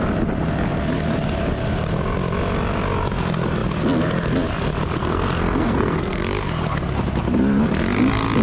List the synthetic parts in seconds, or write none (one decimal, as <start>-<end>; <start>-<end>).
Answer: 5.0-6.2